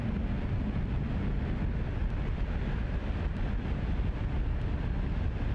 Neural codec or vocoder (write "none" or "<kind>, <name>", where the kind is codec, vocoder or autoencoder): none